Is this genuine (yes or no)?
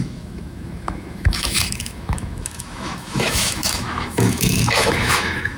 no